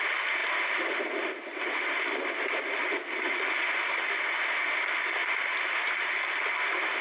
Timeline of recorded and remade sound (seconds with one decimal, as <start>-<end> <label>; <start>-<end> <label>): 0.0-5.2 recorded; 5.2-6.1 remade; 6.1-7.0 recorded